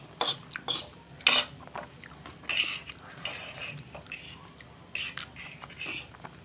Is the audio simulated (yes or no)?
no